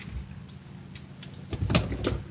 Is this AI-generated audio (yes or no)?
no